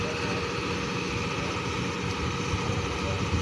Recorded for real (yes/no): yes